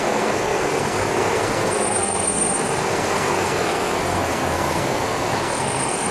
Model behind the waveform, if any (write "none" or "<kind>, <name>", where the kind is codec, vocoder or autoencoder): codec, SNAC